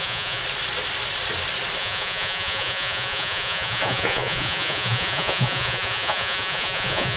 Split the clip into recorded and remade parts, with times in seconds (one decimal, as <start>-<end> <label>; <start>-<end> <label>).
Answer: 0.0-0.4 remade; 0.4-1.8 recorded; 1.8-7.2 remade